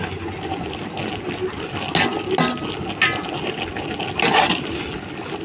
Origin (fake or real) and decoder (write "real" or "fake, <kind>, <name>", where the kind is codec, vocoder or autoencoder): real